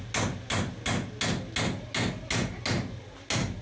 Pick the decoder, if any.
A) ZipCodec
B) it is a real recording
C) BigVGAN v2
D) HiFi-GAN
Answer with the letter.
B